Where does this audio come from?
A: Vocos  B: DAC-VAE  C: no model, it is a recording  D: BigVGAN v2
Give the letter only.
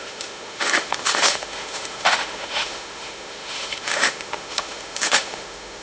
B